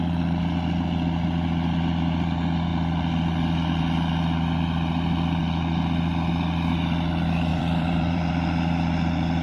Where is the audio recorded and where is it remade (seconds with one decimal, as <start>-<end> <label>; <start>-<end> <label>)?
0.0-7.5 recorded; 7.5-8.3 remade; 8.3-9.4 recorded